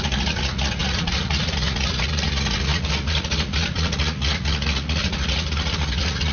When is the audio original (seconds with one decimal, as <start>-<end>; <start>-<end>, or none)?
none